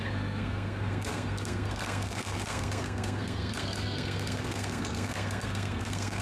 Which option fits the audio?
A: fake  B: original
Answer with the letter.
A